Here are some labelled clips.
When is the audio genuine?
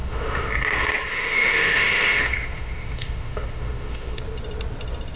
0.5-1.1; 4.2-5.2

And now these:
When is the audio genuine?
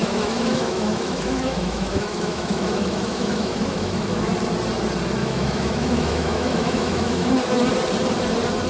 4.3-5.2; 7.3-8.7